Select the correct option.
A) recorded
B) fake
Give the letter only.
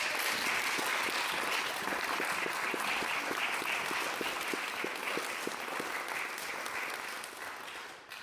A